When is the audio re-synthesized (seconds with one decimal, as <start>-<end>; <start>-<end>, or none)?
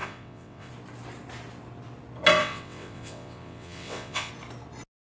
0.0-0.7; 2.4-4.3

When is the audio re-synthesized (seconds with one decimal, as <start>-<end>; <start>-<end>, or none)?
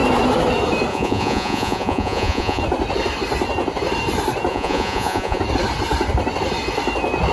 0.9-2.6; 4.5-5.4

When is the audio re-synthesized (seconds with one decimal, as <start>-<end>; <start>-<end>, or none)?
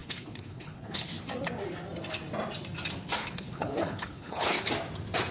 0.0-1.2; 3.2-4.6